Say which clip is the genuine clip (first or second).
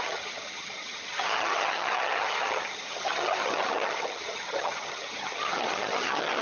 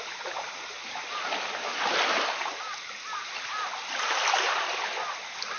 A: second